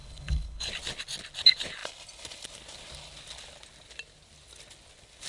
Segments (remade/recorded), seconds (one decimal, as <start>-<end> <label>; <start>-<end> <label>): 0.0-0.7 remade; 0.7-5.3 recorded